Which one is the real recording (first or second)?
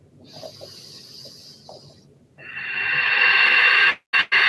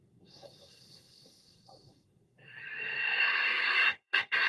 first